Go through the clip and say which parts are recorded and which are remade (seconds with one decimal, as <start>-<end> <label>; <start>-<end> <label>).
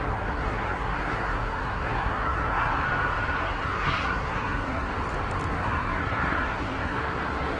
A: 0.0-2.7 remade; 2.7-3.4 recorded; 3.4-4.9 remade; 4.9-5.5 recorded; 5.5-7.6 remade